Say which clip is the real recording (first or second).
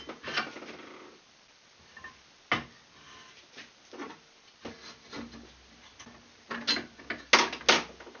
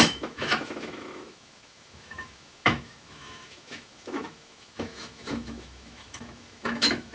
first